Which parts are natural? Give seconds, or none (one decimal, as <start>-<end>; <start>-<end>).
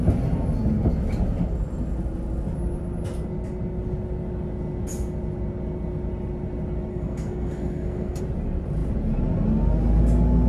0.0-6.9; 8.2-10.5